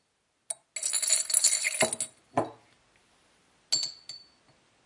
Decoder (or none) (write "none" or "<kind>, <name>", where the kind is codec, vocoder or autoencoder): none